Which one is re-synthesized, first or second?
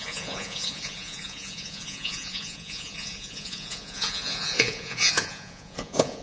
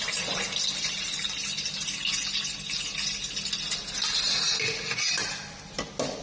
first